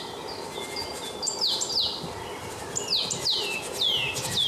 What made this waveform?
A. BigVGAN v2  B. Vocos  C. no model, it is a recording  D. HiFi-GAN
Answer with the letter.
C